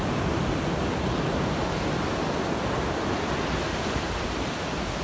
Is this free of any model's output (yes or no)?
yes